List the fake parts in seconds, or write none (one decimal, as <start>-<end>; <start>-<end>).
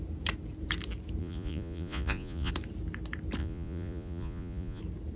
1.2-2.5; 3.4-4.8